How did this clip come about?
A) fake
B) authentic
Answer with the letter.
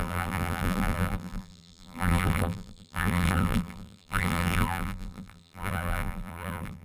A